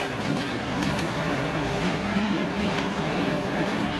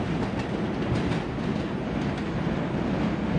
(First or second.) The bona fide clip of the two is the second